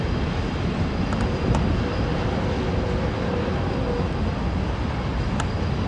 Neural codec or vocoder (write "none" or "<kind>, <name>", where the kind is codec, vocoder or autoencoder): none